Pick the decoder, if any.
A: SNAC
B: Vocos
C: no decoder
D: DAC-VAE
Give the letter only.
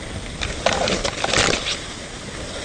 C